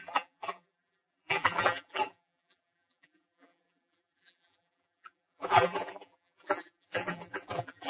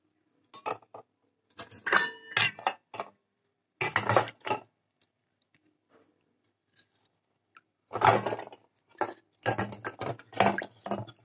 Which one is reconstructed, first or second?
first